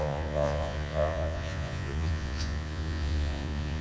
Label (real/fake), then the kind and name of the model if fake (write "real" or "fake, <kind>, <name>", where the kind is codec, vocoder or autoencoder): fake, vocoder, Vocos